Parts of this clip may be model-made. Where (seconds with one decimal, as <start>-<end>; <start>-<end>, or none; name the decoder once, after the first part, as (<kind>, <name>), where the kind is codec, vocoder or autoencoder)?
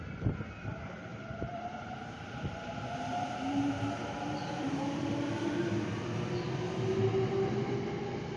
1.1-3.7 (vocoder, BigVGAN v2)